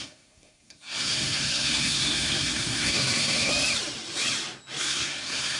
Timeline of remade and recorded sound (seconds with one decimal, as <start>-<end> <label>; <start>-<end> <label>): 0.0-3.5 remade; 3.5-4.8 recorded; 4.8-5.6 remade